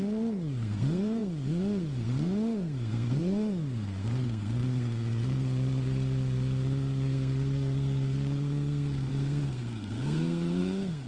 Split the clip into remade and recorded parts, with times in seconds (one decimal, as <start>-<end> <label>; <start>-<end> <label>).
0.0-11.1 remade